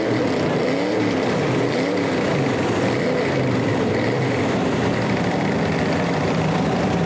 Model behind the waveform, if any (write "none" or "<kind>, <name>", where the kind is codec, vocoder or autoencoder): vocoder, BigVGAN v2